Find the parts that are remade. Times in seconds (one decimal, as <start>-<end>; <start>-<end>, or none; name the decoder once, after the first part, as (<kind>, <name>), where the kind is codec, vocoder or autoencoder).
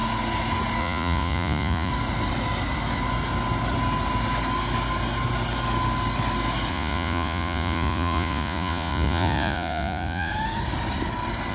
0.8-1.9 (vocoder, Vocos); 6.7-10.3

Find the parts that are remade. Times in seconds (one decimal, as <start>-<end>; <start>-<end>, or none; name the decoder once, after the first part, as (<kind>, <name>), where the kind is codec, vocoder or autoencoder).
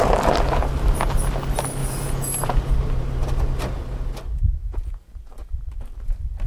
1.8-2.7 (vocoder, Vocos); 4.6-5.2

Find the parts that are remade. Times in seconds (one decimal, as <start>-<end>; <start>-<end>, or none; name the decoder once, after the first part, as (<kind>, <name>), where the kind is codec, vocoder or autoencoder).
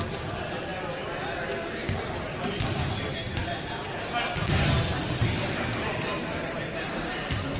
none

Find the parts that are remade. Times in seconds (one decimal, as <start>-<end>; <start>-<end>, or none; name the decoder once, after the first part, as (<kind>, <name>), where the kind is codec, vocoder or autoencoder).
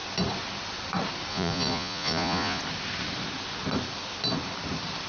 1.3-2.6 (vocoder, Vocos)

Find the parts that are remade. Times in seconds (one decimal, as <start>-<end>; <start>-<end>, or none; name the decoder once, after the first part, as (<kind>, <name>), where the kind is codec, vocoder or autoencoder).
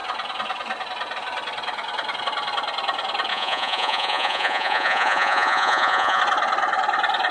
3.3-6.2 (vocoder, Vocos)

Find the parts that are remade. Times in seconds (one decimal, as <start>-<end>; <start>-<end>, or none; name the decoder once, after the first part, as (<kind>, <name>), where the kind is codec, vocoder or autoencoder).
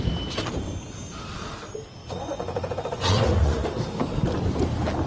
2.0-3.7 (vocoder, Vocos)